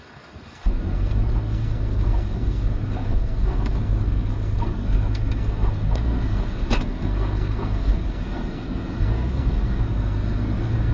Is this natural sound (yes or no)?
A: no